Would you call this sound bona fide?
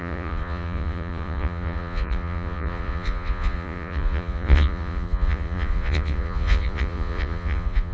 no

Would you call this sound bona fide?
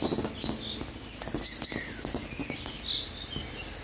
yes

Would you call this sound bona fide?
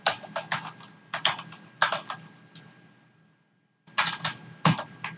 yes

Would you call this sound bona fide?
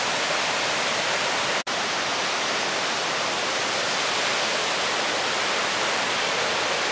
yes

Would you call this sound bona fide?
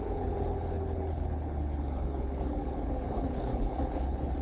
no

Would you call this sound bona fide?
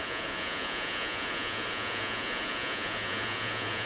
no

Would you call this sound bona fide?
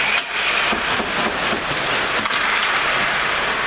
yes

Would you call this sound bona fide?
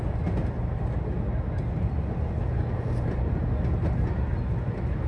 yes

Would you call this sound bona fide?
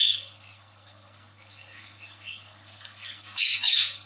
no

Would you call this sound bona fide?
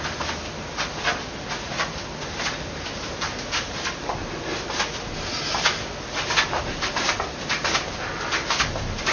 yes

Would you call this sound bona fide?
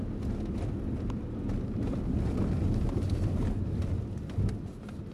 yes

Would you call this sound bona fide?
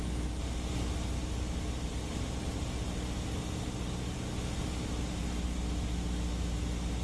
yes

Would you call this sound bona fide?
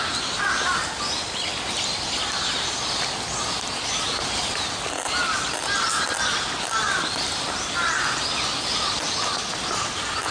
yes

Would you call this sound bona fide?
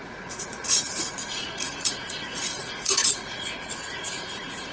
no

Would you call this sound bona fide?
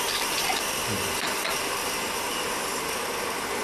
yes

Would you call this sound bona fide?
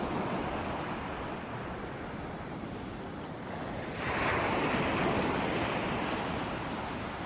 yes